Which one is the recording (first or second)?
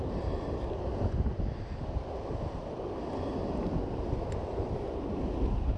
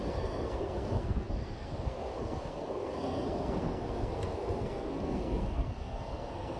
first